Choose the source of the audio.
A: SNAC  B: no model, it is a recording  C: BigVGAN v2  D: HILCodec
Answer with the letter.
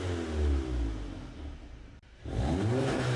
B